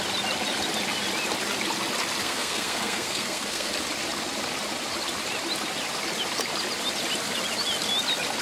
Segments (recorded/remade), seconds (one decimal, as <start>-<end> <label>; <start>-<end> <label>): 0.0-2.2 recorded; 2.2-3.7 remade; 3.7-8.4 recorded